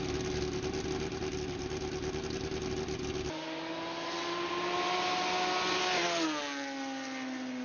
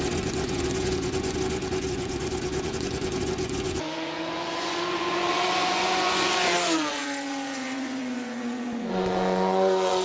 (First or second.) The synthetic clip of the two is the second